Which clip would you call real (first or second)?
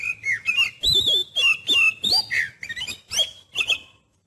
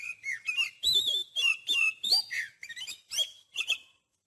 first